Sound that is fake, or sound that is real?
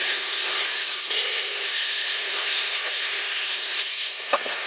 fake